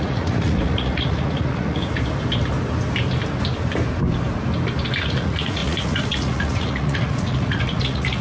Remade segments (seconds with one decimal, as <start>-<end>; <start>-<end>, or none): 0.0-1.8; 5.0-8.2